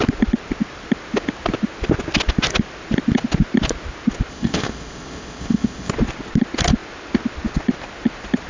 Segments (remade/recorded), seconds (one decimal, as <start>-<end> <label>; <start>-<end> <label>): 0.0-4.3 recorded; 4.3-5.9 remade; 5.9-8.5 recorded